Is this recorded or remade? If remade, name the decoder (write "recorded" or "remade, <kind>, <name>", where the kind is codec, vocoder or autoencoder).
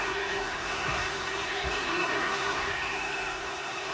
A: remade, codec, SNAC